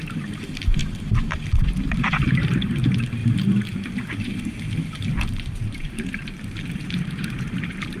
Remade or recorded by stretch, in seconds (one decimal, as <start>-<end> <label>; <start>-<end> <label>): 0.0-8.0 remade